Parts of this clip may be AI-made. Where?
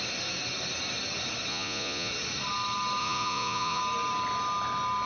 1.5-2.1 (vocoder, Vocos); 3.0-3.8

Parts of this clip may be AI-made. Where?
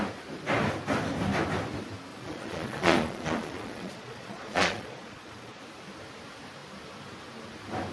2.1-5.6 (vocoder, Vocos)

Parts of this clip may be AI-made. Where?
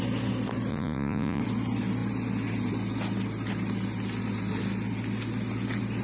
0.7-1.4 (vocoder, Vocos)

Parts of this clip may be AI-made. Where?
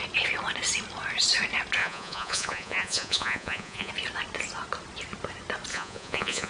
1.8-3.9 (vocoder, Vocos); 5.7-6.5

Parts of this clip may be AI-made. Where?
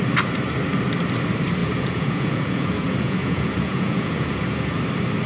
1.6-4.8 (vocoder, Vocos)